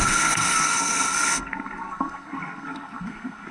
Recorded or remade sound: remade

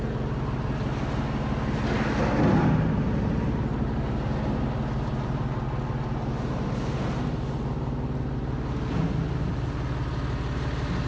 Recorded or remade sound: recorded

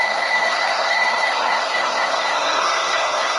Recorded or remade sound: remade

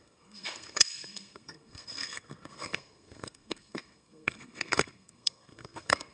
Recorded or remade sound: remade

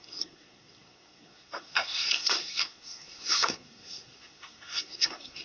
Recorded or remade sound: remade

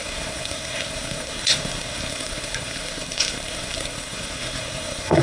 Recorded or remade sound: remade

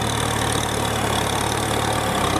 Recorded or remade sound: recorded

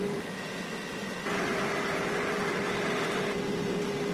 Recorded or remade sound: recorded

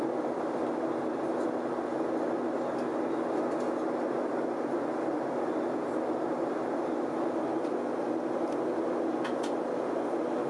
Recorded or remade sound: recorded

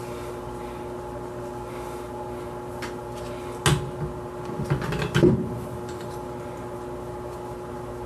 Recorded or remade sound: recorded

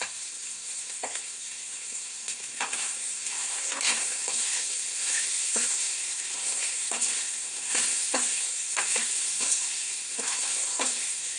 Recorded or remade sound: remade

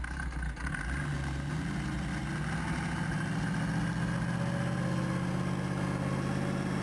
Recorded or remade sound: recorded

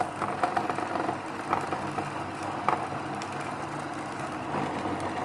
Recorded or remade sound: recorded